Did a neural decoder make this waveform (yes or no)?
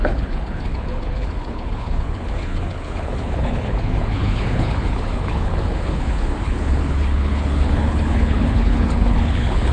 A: yes